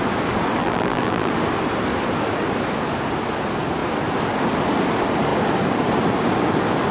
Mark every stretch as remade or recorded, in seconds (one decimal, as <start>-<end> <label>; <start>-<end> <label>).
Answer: 0.0-0.6 recorded; 0.6-1.3 remade; 1.3-6.9 recorded